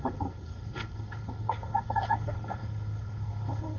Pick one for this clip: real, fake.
fake